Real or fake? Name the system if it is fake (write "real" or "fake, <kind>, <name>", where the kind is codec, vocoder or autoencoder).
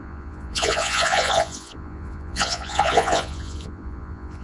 fake, vocoder, Vocos